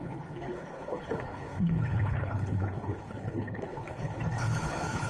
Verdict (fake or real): fake